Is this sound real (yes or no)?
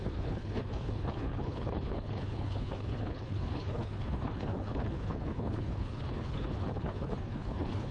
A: no